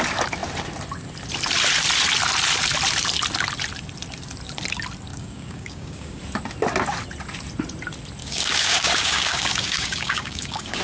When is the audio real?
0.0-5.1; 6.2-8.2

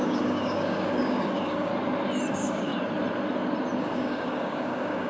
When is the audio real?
1.7-2.3; 2.7-3.8

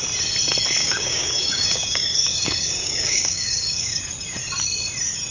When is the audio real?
0.0-0.8; 4.0-5.3

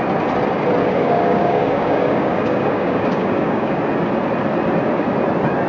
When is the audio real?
0.0-0.8; 3.8-5.7

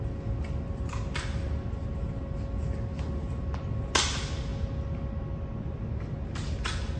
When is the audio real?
0.0-7.0

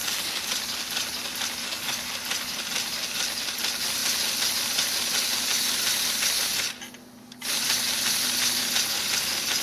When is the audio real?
0.5-1.6; 2.1-9.6

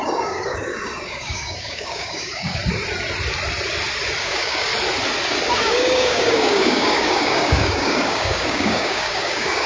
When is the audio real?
2.6-4.2; 4.7-5.6

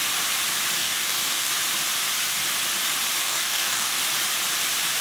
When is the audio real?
0.0-0.8; 1.5-3.2; 4.0-5.0